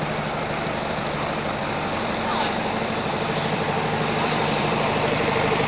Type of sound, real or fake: fake